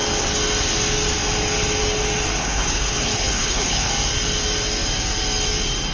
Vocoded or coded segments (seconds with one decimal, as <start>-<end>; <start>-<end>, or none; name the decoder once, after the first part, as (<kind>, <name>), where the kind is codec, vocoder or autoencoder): 2.4-3.9 (codec, HILCodec)